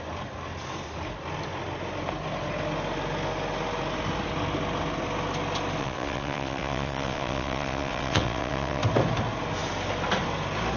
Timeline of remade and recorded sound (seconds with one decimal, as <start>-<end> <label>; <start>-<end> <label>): 0.0-5.8 recorded; 5.8-8.8 remade; 8.8-10.8 recorded